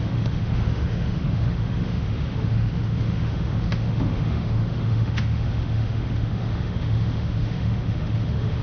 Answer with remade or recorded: remade